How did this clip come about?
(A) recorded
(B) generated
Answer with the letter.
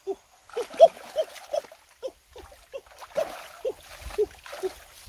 A